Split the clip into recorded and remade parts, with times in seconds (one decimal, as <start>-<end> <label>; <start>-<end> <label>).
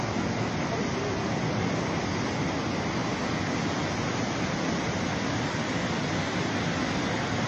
0.0-7.5 recorded